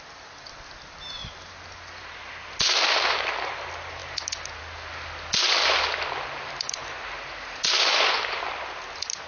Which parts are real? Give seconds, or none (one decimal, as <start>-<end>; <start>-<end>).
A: 0.0-9.3